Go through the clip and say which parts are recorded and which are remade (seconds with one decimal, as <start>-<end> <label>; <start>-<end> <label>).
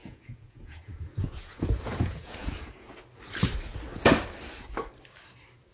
0.0-2.9 remade; 2.9-5.7 recorded